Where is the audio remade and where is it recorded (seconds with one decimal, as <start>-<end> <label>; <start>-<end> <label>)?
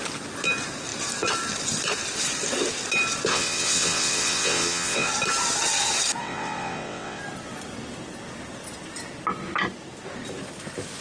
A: 0.0-3.3 recorded; 3.3-5.1 remade; 5.1-6.2 recorded; 6.2-7.2 remade; 7.2-11.0 recorded